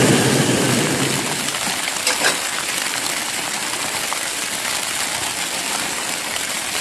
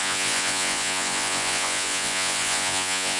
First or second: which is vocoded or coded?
second